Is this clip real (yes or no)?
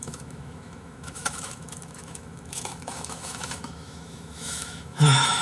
no